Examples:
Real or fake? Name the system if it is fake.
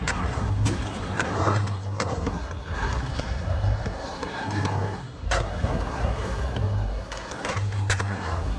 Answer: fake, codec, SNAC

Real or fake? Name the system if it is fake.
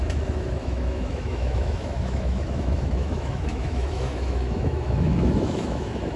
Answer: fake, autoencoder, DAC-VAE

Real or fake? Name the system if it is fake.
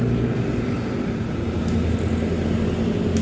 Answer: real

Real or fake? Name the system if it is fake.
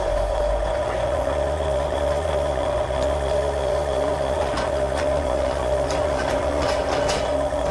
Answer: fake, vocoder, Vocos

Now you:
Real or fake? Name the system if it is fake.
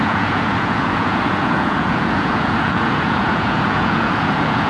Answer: fake, vocoder, Vocos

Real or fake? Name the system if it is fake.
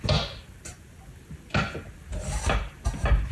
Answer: real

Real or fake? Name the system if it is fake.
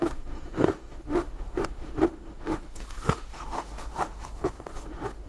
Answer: fake, autoencoder, DAC-VAE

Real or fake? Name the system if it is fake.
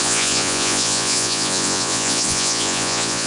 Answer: fake, vocoder, Vocos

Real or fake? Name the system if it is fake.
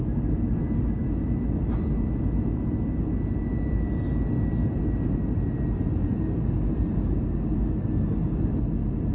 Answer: real